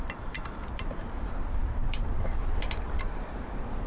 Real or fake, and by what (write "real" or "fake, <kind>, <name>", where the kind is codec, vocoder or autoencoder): real